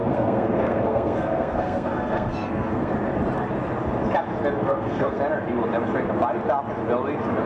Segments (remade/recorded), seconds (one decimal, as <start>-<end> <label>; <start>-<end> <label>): 0.0-2.9 remade; 2.9-4.6 recorded; 4.6-5.2 remade; 5.2-7.5 recorded